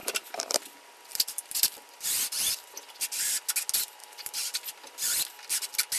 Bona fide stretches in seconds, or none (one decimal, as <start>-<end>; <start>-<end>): 3.0-4.0; 5.2-6.0